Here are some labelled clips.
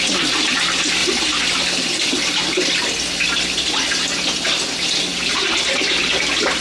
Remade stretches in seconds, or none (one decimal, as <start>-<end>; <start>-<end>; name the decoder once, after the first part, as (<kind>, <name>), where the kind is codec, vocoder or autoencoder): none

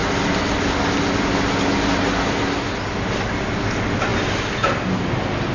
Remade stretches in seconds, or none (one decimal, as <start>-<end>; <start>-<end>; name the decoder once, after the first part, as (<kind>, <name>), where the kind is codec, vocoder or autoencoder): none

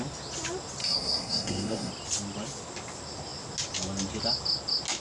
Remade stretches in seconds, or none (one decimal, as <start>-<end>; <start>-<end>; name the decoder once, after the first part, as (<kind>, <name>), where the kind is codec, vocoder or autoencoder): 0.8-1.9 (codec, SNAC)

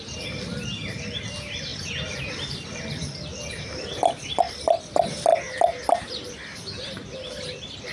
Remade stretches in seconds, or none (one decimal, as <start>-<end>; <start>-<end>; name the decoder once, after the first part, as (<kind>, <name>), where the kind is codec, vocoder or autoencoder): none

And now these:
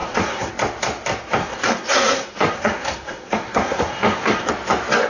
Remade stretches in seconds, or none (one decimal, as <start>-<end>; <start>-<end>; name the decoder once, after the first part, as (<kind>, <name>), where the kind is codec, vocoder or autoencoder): 0.0-0.5 (codec, SNAC); 1.4-4.5